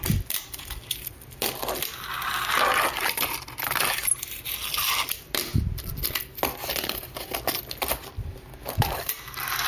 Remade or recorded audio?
recorded